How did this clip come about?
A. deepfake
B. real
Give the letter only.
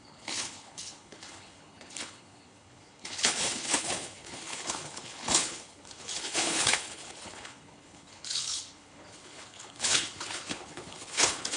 A